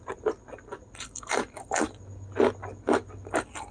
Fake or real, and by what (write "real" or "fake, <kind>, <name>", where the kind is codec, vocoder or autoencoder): real